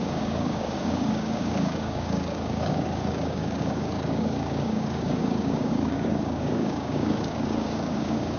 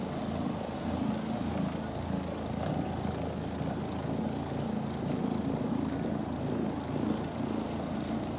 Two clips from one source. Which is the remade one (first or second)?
first